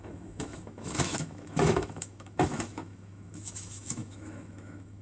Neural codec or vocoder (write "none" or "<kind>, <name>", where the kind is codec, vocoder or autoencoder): autoencoder, DAC-VAE